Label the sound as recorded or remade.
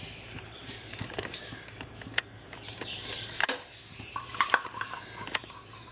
remade